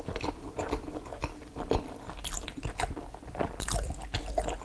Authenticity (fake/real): real